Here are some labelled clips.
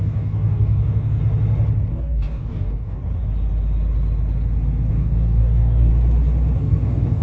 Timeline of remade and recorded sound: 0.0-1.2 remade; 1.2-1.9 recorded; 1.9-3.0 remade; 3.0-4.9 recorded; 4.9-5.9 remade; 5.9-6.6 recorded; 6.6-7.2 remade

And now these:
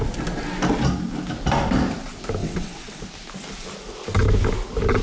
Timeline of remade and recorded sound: 0.0-2.4 recorded; 2.4-3.0 remade; 3.0-5.0 recorded